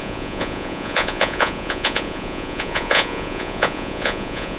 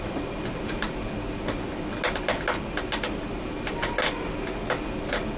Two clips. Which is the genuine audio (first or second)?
second